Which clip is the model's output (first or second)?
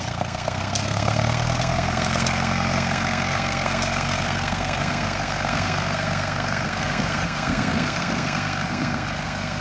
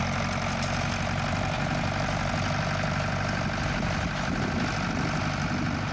first